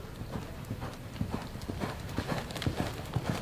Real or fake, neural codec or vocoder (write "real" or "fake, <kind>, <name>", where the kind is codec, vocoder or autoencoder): real